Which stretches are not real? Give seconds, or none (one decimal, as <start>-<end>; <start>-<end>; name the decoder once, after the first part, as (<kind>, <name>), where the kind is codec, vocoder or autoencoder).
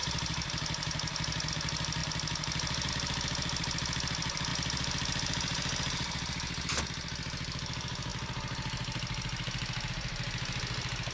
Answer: 0.0-1.5 (vocoder, BigVGAN v2); 4.5-6.8